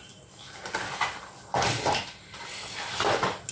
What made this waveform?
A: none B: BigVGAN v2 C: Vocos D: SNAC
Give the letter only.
A